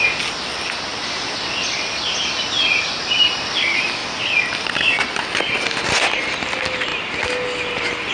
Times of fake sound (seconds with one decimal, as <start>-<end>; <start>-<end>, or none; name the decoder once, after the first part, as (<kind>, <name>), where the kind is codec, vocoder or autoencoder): none